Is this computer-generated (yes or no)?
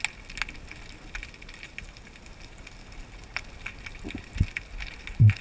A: no